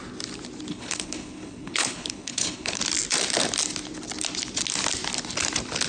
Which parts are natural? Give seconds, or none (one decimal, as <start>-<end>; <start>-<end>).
0.0-0.7; 2.8-5.9